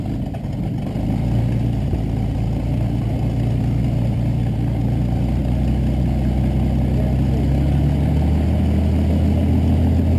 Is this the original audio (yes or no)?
yes